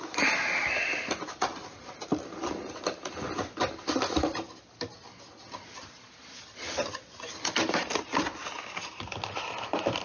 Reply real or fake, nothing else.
real